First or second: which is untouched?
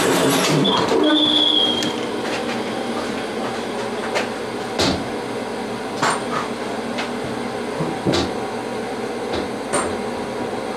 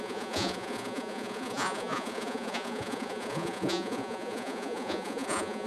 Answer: first